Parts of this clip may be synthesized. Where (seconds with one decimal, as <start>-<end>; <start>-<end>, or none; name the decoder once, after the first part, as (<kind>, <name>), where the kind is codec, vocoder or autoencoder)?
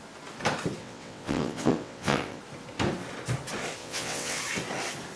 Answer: 0.8-2.4 (vocoder, WaveNeXt); 3.8-4.4